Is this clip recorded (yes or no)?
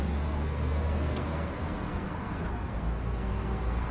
no